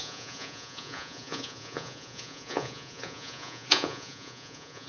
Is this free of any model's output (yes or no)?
no